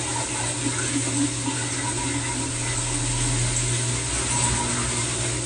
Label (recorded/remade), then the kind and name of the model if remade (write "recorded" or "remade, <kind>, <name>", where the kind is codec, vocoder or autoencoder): recorded